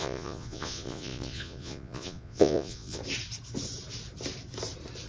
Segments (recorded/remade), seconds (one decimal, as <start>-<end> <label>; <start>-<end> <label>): 0.0-3.0 remade; 3.0-5.1 recorded